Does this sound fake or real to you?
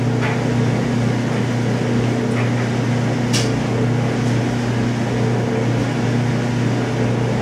real